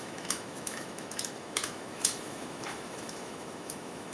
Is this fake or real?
fake